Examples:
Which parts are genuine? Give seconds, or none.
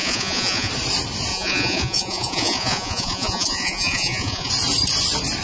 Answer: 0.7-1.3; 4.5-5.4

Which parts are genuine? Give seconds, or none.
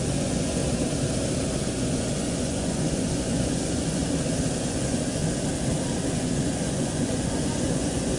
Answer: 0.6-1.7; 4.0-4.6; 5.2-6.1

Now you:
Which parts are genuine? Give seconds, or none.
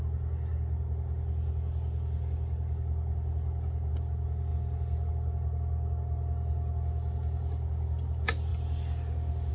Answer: 0.0-9.5